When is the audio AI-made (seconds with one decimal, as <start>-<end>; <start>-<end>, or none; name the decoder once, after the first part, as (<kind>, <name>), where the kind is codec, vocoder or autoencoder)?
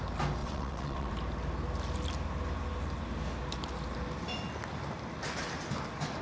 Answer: 0.4-1.1 (vocoder, WaveNeXt)